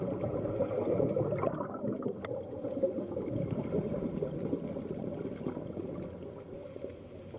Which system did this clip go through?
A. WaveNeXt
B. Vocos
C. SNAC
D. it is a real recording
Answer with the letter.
D